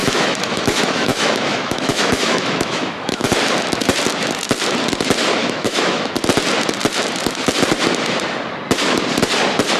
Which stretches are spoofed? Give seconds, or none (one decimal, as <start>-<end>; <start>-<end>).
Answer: 0.0-3.3; 5.4-6.1